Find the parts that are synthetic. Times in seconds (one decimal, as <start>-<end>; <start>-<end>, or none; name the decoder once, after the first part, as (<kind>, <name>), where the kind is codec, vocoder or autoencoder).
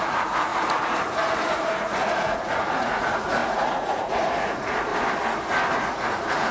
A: 0.0-4.9 (vocoder, Vocos); 5.7-6.5